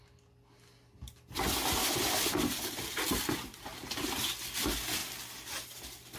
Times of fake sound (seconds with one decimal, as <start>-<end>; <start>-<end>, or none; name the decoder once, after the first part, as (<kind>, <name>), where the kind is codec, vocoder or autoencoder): 1.6-4.0 (vocoder, BigVGAN v2)